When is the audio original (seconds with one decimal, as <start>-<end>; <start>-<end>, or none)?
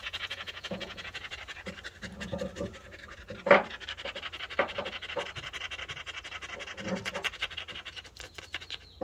1.3-9.0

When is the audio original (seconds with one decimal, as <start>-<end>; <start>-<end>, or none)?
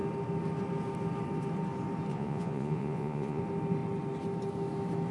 0.0-2.1; 3.4-5.1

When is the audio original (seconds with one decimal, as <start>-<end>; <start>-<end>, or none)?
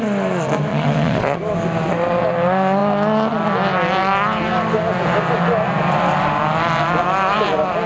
0.0-0.7; 1.4-7.9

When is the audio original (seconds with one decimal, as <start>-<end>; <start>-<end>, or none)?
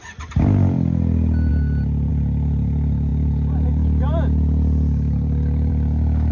0.0-6.3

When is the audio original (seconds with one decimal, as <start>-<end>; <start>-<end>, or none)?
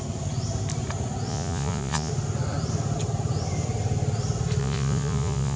0.0-1.3; 2.1-4.6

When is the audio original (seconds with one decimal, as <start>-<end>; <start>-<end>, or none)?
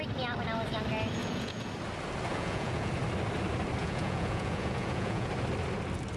0.0-1.2; 1.7-2.3; 2.9-3.8; 5.3-6.2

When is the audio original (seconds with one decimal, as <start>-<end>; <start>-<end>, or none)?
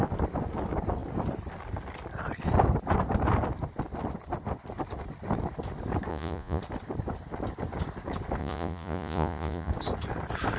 0.0-6.1; 6.6-8.4; 9.7-10.6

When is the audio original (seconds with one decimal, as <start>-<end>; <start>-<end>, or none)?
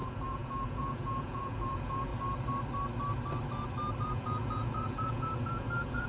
2.1-4.0